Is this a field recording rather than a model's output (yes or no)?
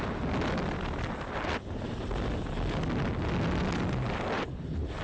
yes